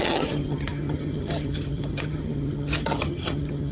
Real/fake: fake